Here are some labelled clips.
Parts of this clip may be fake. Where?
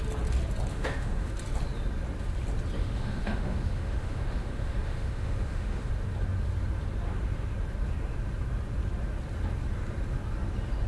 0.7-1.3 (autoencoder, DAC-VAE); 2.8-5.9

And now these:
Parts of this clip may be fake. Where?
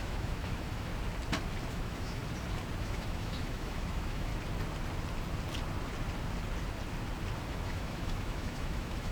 0.0-0.9 (autoencoder, DAC-VAE); 1.7-2.2; 2.8-4.3; 7.5-9.1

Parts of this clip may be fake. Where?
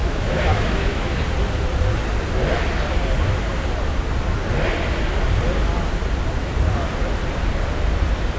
0.0-1.2 (autoencoder, DAC-VAE)